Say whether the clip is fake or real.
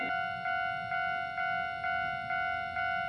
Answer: real